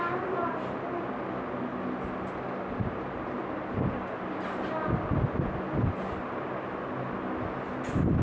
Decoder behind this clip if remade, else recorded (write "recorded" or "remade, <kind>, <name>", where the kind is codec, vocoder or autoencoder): recorded